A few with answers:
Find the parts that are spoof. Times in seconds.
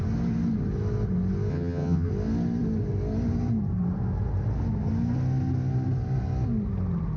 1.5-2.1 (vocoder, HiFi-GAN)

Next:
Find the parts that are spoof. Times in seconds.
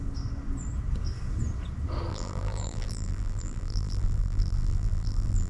2.1-5.5 (vocoder, BigVGAN v2)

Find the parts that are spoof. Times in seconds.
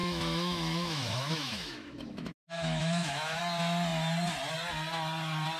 0.0-3.4 (autoencoder, DAC-VAE)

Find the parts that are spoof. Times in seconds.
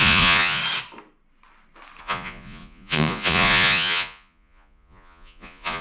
0.0-0.6 (vocoder, Vocos); 2.0-5.8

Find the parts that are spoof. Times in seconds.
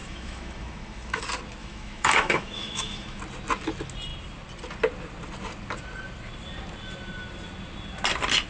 0.0-1.2 (autoencoder, DAC-VAE); 1.6-3.2